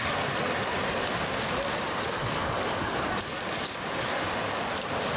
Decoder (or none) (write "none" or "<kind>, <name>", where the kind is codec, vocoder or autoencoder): none